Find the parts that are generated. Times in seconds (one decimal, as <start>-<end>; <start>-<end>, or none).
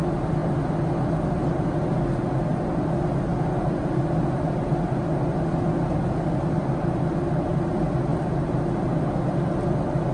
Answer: none